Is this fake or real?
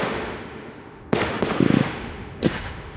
fake